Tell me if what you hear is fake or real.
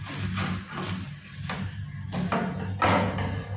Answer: real